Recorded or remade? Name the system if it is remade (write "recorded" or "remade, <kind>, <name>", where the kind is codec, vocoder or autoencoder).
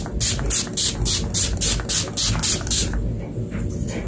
recorded